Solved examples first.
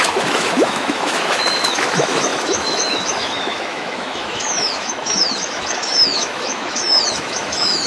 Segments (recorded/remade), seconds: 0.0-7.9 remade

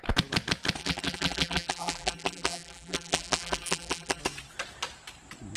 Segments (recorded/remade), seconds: 0.0-0.8 recorded; 0.8-4.2 remade; 4.2-5.6 recorded

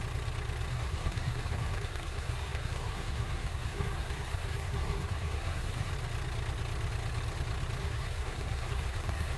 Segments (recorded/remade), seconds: 0.0-0.7 recorded; 0.7-5.9 remade; 5.9-7.8 recorded; 7.8-9.4 remade

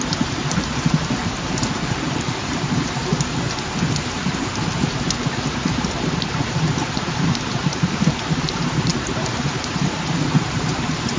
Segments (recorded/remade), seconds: 0.0-3.1 remade; 3.1-3.9 recorded; 3.9-11.2 remade

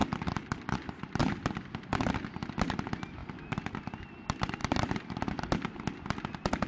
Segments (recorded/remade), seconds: 0.0-1.2 remade; 1.2-4.6 recorded; 4.6-5.4 remade; 5.4-6.7 recorded

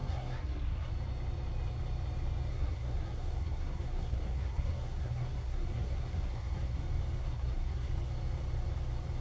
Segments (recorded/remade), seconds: 0.0-0.9 remade; 0.9-2.5 recorded; 2.5-6.8 remade; 6.8-7.2 recorded; 7.2-7.9 remade; 7.9-9.2 recorded

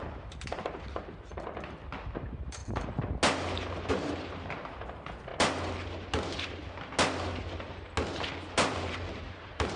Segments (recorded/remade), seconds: 0.0-1.3 remade; 1.3-2.2 recorded; 2.2-2.6 remade; 2.6-3.9 recorded; 3.9-5.3 remade; 5.3-8.7 recorded; 8.7-9.8 remade

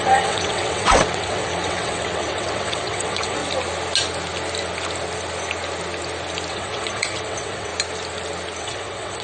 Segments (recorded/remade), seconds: 0.0-3.4 remade; 3.4-6.5 recorded; 6.5-7.7 remade; 7.7-8.6 recorded; 8.6-9.2 remade